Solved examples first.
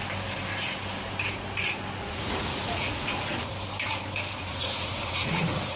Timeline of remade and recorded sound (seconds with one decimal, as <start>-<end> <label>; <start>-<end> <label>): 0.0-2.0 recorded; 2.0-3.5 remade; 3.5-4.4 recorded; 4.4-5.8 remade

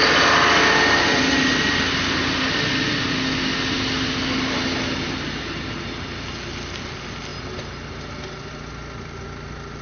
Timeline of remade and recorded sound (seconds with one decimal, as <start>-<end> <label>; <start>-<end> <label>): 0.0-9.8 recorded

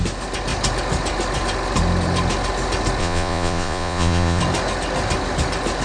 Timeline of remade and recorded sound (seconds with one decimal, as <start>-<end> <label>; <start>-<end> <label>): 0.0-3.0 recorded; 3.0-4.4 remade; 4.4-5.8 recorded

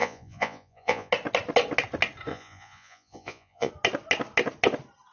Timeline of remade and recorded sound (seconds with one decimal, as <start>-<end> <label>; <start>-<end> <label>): 0.0-1.1 remade; 1.1-2.3 recorded; 2.3-3.7 remade; 3.7-5.1 recorded